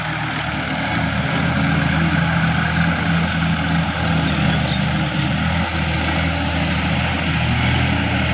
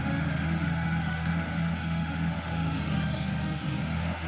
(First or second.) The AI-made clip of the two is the second